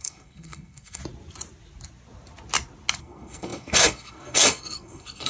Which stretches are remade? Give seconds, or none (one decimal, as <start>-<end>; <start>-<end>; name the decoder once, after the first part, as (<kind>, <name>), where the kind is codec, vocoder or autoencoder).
0.0-1.0 (codec, SNAC); 3.0-5.3